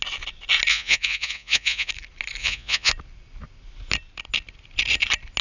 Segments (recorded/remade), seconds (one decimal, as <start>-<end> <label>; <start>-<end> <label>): 0.0-0.7 recorded; 0.7-1.9 remade; 1.9-2.4 recorded; 2.4-2.9 remade; 2.9-5.4 recorded